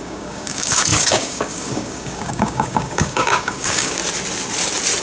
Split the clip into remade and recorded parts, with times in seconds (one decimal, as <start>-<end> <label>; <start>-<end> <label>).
0.0-4.0 remade; 4.0-5.0 recorded